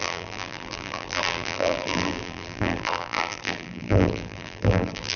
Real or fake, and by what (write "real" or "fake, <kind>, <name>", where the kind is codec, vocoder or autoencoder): fake, vocoder, BigVGAN v2